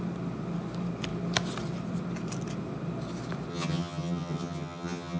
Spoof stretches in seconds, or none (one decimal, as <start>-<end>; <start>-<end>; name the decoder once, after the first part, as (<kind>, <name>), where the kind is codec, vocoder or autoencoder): 3.5-5.2 (vocoder, HiFi-GAN)